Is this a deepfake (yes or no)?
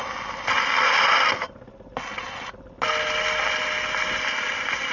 no